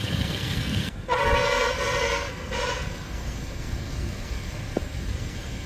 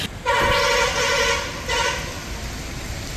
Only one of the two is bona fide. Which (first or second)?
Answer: second